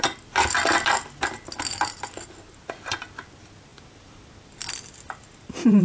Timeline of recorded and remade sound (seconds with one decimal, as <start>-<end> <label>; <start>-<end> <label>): 0.0-3.7 recorded; 3.7-5.8 remade